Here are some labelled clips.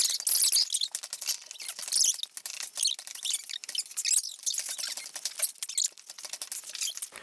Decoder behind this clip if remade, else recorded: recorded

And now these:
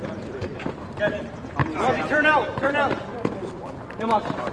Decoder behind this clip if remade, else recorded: remade, vocoder, BigVGAN v2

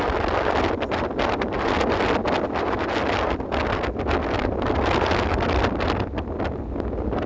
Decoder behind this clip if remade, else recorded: recorded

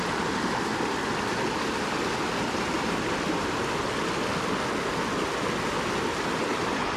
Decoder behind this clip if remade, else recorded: recorded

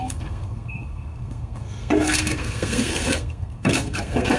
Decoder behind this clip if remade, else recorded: remade, codec, SNAC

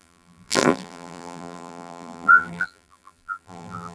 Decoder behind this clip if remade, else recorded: remade, vocoder, BigVGAN v2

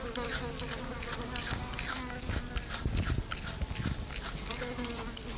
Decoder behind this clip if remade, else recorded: recorded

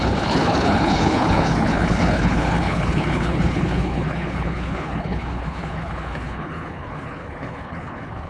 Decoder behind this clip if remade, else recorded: remade, codec, HILCodec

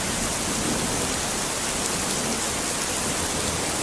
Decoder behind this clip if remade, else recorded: recorded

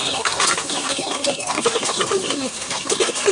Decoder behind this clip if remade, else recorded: remade, codec, SNAC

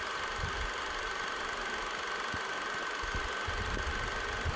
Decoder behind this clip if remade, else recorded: recorded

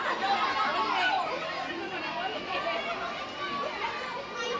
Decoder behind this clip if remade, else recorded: recorded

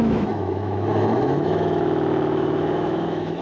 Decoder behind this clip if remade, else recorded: remade, autoencoder, DAC-VAE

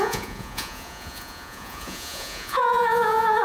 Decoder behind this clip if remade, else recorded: remade, vocoder, Vocos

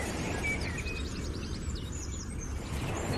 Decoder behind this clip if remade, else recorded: remade, vocoder, BigVGAN v2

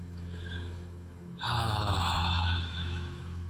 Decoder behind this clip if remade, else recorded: remade, autoencoder, DAC-VAE